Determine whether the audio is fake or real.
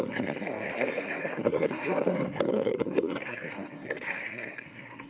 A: fake